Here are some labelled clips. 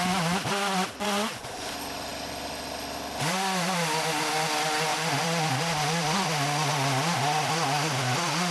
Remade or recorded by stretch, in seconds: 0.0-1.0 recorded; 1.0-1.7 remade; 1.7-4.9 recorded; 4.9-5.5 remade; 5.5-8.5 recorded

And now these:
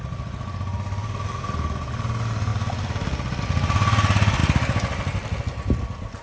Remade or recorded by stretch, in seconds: 0.0-6.2 recorded

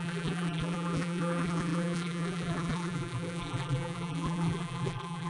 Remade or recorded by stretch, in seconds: 0.0-5.3 remade

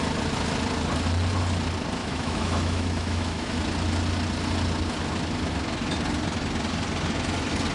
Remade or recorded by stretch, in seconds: 0.0-2.0 recorded; 2.0-3.6 remade; 3.6-7.7 recorded

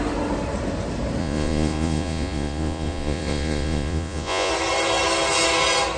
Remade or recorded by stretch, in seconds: 0.0-1.2 recorded; 1.2-4.5 remade; 4.5-6.0 recorded

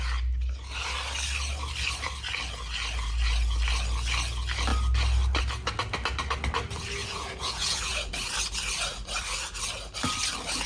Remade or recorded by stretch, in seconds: 0.0-7.0 recorded; 7.0-8.1 remade; 8.1-10.7 recorded

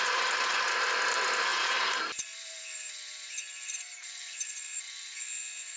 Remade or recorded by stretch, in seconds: 0.0-5.8 recorded